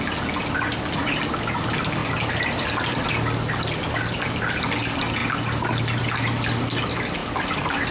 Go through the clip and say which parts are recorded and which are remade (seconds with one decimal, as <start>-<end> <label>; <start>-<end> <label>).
0.0-2.0 recorded; 2.0-3.0 remade; 3.0-7.2 recorded; 7.2-7.9 remade